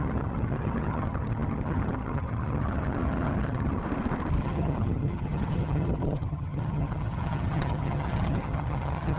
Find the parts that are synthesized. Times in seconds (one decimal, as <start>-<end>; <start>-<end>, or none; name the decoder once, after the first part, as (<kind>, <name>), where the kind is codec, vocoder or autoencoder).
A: 0.0-3.8 (vocoder, HiFi-GAN); 4.4-9.2